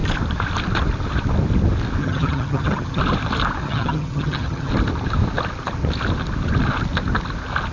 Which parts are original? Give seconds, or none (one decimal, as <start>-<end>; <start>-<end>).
0.0-2.0; 3.0-3.6; 4.7-7.7